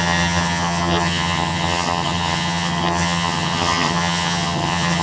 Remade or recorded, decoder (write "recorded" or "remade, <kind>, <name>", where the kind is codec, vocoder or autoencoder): remade, vocoder, HiFi-GAN